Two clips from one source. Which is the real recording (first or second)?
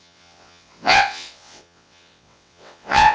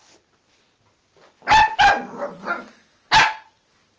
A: second